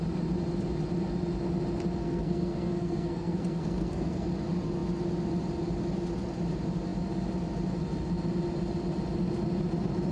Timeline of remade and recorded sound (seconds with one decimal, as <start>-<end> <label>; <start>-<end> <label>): 0.0-2.0 recorded; 2.0-4.3 remade; 4.3-10.1 recorded